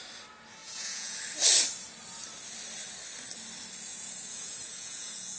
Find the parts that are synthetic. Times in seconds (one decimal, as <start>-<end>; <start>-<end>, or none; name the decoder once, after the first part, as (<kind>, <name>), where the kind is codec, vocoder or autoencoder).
0.6-1.2 (vocoder, Vocos); 3.9-5.4